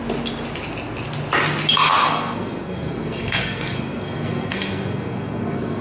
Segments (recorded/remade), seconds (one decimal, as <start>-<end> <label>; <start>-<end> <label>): 0.0-2.0 recorded; 2.0-5.8 remade